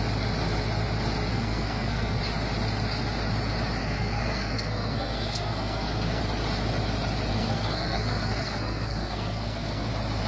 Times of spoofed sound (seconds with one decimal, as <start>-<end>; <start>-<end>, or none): 1.3-2.2; 3.8-6.2; 7.3-9.9